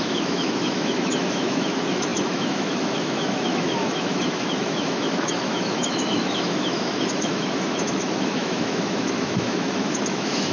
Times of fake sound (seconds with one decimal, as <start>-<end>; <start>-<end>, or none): 0.0-10.5